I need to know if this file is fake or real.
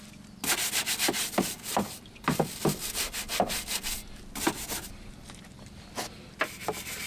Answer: real